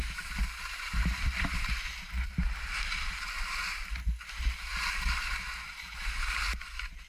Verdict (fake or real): real